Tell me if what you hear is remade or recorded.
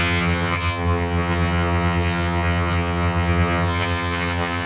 remade